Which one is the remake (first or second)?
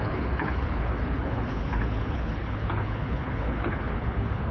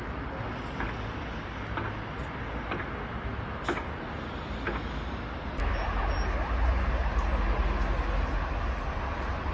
first